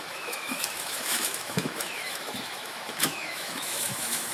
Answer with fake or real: fake